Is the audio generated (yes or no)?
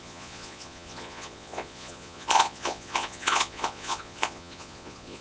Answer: yes